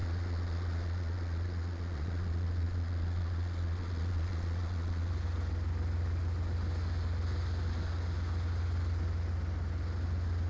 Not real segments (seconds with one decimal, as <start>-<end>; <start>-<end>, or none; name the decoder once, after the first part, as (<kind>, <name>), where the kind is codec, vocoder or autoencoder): 0.0-5.1 (vocoder, Vocos)